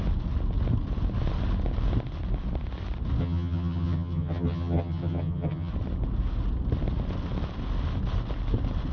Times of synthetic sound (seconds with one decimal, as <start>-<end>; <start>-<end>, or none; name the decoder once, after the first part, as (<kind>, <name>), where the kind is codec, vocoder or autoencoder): 3.2-5.7 (vocoder, HiFi-GAN)

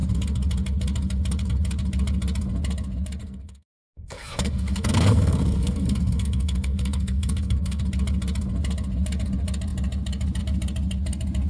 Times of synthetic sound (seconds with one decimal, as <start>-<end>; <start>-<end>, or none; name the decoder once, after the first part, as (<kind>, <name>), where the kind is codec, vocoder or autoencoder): 3.2-7.8 (codec, SNAC)

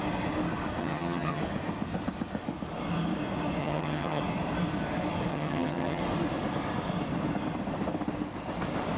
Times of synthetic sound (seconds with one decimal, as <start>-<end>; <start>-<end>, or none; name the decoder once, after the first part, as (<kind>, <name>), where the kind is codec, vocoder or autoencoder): 0.8-1.4 (vocoder, HiFi-GAN); 3.6-4.2; 5.3-6.0

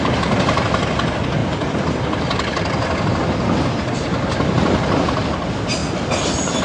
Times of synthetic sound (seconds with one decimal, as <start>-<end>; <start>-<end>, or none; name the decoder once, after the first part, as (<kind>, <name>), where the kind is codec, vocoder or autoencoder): none